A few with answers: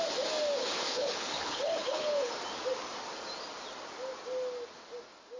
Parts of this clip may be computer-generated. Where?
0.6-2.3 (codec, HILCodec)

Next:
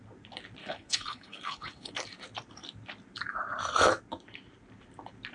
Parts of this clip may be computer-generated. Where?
0.6-1.9 (codec, HILCodec)

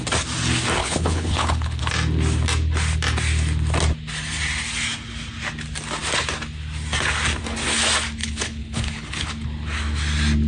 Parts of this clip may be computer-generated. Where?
0.8-1.8 (codec, HILCodec); 8.2-9.3

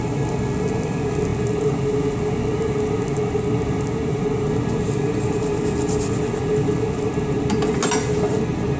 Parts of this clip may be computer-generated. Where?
none

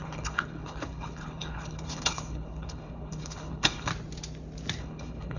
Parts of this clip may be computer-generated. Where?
0.0-3.9 (codec, HILCodec); 4.8-5.4

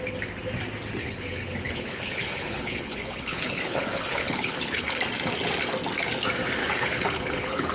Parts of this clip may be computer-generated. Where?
1.0-5.0 (codec, HILCodec); 6.6-7.7

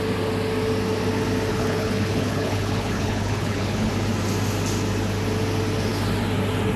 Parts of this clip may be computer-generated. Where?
1.5-3.9 (codec, HILCodec)